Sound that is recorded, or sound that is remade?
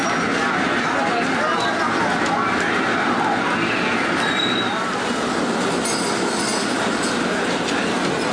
recorded